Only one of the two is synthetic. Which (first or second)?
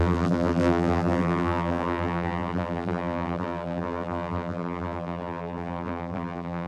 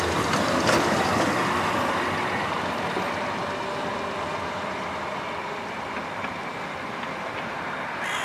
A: first